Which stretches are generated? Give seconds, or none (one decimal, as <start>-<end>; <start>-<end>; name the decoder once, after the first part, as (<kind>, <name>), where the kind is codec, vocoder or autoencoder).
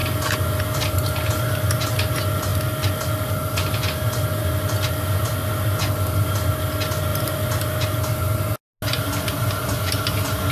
7.1-7.6 (vocoder, BigVGAN v2)